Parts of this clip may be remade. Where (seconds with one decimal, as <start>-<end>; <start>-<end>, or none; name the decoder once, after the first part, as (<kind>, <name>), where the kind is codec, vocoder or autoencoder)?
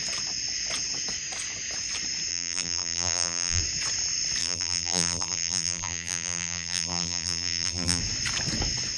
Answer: 2.3-3.6 (vocoder, BigVGAN v2); 4.4-8.0